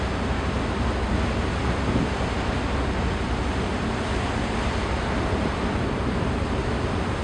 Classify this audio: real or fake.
real